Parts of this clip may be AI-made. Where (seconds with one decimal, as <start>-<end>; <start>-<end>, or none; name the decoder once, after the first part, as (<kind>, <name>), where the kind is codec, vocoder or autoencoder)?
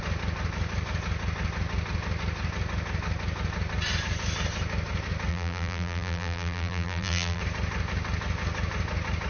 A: 5.3-7.4 (vocoder, BigVGAN v2)